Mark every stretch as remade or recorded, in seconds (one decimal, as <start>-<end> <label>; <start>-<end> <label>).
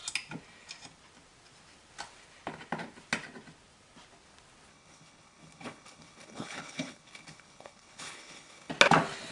0.0-4.7 recorded; 4.7-8.7 remade; 8.7-9.3 recorded